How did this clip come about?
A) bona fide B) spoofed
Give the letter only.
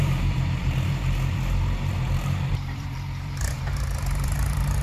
B